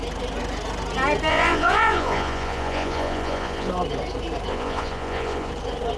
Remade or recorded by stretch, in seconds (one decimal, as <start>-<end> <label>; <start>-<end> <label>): 0.0-1.3 recorded; 1.3-3.7 remade; 3.7-4.5 recorded; 4.5-5.5 remade; 5.5-6.0 recorded